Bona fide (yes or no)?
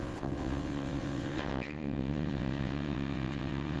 no